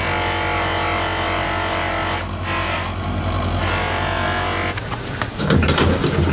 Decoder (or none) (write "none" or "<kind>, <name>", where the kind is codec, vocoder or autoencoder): none